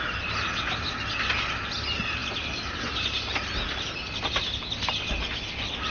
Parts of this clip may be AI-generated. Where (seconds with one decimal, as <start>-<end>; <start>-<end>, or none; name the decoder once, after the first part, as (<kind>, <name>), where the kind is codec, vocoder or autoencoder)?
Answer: none

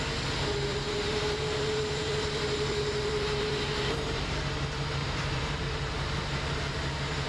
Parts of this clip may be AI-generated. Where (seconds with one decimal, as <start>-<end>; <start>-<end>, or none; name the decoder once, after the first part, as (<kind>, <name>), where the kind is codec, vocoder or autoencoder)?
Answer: 0.7-4.4 (vocoder, BigVGAN v2); 5.0-5.6

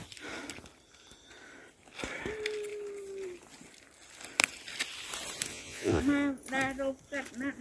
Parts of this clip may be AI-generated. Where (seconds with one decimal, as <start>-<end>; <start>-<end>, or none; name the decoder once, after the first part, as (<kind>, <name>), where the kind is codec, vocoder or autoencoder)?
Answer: 5.5-6.0 (vocoder, Vocos)

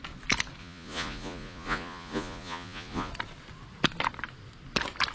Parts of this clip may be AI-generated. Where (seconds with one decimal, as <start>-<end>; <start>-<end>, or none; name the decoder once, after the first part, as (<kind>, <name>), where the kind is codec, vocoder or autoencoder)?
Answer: 0.6-3.1 (vocoder, Vocos)

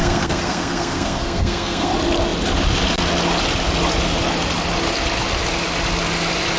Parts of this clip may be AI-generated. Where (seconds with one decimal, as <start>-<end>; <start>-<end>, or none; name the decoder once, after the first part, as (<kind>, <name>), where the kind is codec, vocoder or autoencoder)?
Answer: 0.0-1.9 (codec, SNAC)